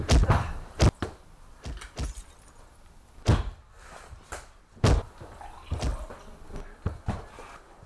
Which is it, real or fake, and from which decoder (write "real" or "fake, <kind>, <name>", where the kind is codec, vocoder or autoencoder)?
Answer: real